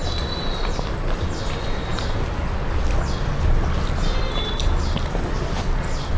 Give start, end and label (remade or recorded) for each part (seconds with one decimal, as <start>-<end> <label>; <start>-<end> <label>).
0.0-1.4 remade; 1.4-6.2 recorded